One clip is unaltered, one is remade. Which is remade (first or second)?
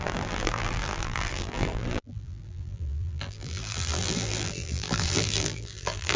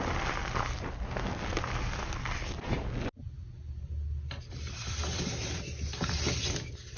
first